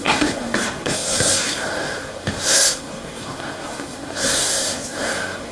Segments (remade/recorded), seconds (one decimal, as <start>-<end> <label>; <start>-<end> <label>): 0.0-5.5 remade